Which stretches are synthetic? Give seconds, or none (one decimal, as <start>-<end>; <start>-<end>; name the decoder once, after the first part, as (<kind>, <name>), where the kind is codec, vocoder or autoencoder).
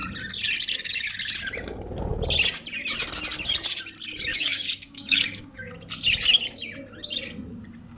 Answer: 4.3-5.7 (codec, DAC)